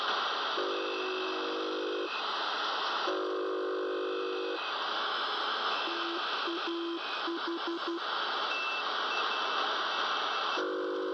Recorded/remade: recorded